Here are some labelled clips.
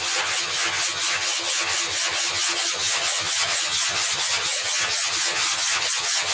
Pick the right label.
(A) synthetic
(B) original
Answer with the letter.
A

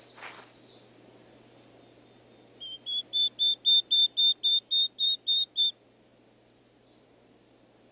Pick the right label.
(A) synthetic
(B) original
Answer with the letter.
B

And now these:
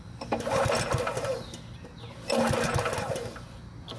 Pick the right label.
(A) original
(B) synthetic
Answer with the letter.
A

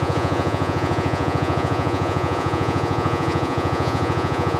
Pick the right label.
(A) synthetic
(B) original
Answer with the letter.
A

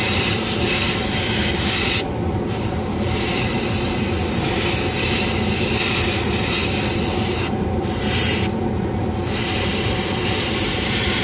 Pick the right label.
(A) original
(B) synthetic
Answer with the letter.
B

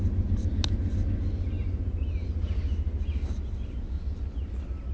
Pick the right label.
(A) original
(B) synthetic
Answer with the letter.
A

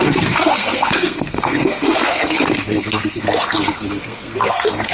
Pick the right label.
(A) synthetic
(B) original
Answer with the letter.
A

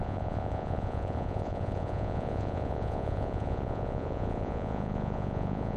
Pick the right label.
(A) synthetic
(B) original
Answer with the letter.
A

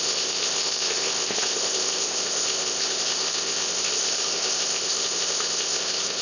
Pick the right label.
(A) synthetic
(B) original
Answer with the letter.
A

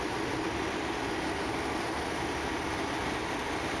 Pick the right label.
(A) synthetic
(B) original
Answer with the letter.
B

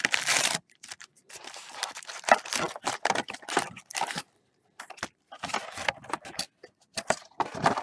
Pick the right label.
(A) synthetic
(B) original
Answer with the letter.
A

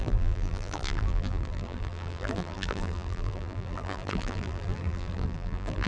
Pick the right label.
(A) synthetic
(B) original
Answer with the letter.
A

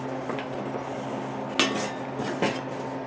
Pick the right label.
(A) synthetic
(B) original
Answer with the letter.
B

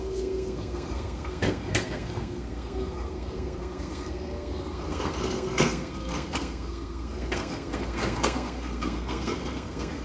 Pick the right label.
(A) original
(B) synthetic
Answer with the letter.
B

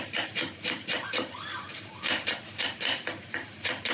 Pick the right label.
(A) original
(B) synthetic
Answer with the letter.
B